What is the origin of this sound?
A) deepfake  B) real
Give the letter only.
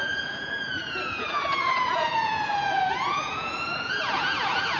A